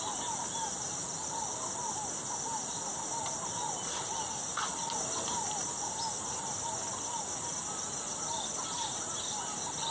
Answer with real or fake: real